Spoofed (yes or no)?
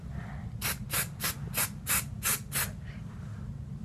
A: no